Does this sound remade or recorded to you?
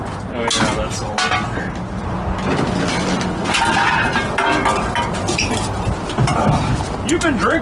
recorded